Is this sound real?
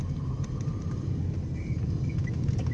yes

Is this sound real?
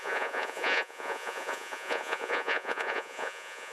no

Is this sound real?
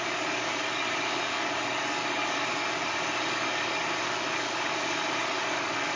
no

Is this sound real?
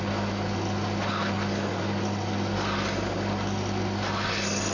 yes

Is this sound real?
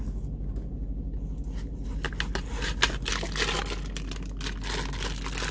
yes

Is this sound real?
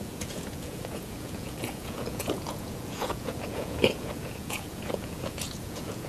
no